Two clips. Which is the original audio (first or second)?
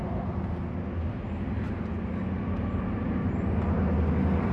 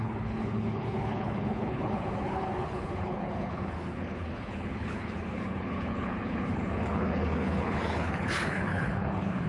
first